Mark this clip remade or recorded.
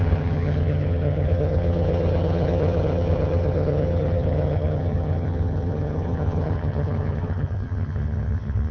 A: remade